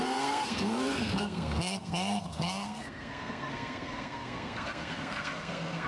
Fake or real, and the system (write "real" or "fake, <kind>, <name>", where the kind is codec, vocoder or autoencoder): fake, codec, SNAC